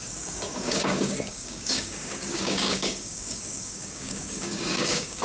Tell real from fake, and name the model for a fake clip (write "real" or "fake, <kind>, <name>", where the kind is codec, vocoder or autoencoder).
fake, codec, DAC